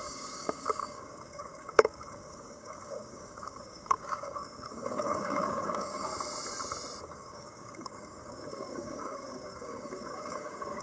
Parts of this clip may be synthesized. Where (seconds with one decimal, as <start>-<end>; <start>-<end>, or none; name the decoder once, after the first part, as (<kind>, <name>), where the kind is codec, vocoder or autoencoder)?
0.0-6.1 (codec, DAC); 7.0-10.8